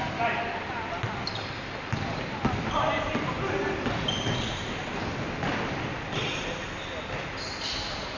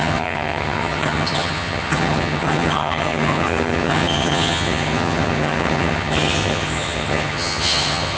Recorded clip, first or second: first